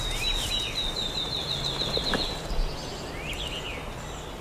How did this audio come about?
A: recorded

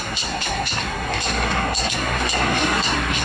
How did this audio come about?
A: remade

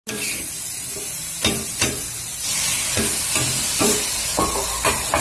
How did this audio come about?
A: recorded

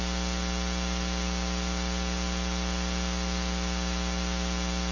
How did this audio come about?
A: recorded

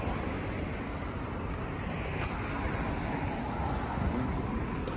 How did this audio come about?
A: recorded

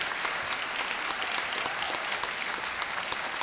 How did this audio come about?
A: recorded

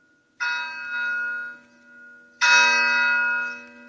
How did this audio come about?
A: recorded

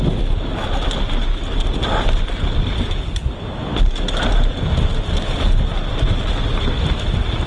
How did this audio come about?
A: recorded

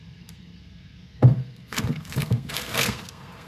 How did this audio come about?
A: remade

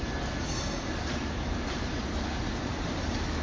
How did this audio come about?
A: recorded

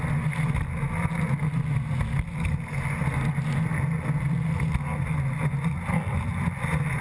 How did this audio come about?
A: recorded